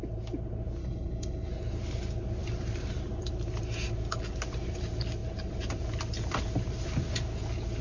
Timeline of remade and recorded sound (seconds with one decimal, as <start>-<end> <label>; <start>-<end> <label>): 0.0-0.8 recorded; 0.8-1.5 remade; 1.5-7.8 recorded